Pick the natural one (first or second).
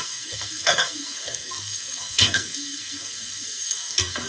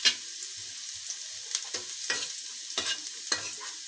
second